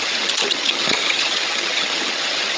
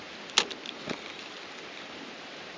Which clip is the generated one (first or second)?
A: first